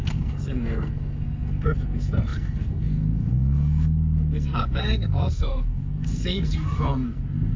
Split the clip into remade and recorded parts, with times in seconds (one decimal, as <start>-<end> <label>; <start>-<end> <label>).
0.0-7.6 remade